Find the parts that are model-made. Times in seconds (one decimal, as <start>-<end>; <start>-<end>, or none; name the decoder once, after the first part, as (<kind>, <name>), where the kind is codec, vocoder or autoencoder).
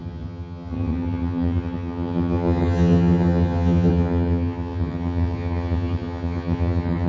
0.0-7.1 (vocoder, HiFi-GAN)